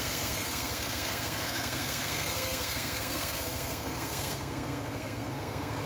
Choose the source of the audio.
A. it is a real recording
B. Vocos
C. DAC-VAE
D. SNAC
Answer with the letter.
D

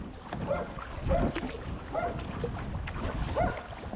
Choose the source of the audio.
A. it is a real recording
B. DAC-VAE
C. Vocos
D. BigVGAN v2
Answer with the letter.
A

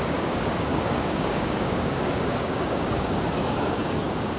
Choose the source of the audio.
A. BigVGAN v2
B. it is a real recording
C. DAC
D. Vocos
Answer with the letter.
C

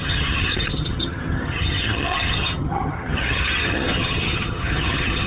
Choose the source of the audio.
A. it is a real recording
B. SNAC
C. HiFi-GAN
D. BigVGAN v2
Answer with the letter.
C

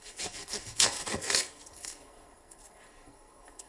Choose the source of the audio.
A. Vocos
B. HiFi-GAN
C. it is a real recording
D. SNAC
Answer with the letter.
D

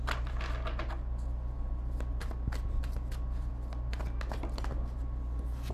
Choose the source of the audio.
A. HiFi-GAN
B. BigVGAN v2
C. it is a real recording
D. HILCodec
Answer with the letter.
C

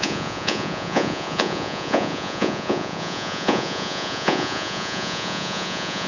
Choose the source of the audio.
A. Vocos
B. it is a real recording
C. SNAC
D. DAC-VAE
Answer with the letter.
A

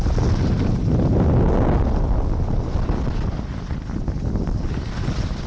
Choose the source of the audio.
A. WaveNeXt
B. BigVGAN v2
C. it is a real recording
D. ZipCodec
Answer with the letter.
C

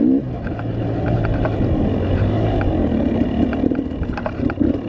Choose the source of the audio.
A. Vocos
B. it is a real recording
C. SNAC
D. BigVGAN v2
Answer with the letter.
B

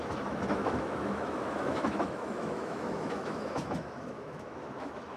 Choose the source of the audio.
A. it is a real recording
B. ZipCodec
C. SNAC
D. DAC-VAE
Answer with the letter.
D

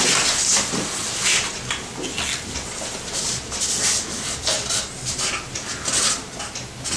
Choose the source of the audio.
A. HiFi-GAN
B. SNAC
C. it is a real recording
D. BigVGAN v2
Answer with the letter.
C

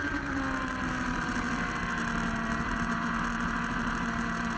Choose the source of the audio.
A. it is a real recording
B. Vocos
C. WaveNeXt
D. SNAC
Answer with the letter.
A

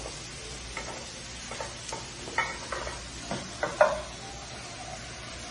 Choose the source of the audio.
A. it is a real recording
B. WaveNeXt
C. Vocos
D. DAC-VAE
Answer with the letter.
A